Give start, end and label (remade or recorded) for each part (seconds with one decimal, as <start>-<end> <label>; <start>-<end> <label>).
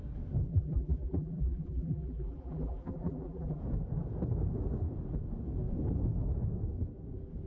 0.0-0.5 recorded; 0.5-3.6 remade; 3.6-7.5 recorded